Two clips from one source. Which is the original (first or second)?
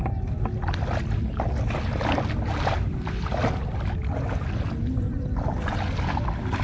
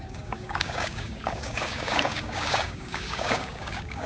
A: first